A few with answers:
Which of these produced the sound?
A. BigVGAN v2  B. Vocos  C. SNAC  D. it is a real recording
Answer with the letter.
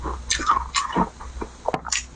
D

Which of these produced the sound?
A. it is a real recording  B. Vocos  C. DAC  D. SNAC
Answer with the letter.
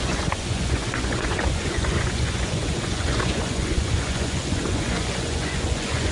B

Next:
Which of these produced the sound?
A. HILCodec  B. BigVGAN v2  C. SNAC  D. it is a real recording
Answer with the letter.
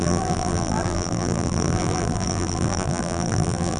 B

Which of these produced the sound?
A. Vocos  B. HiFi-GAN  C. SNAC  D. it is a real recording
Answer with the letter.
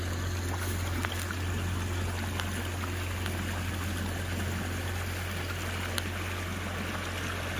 D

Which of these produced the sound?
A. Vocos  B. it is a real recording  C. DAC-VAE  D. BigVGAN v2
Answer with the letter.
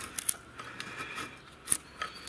B